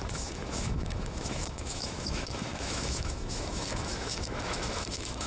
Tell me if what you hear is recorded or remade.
remade